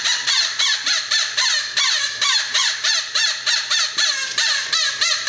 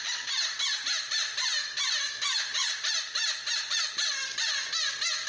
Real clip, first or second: second